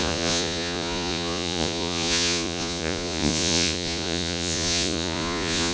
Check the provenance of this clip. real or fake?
fake